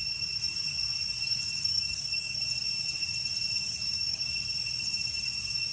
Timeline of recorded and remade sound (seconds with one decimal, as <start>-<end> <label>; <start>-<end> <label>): 0.0-1.7 recorded; 1.7-2.4 remade; 2.4-3.6 recorded; 3.6-4.3 remade; 4.3-5.7 recorded